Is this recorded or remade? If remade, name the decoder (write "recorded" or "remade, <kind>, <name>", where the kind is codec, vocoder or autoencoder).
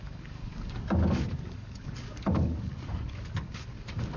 remade, codec, DAC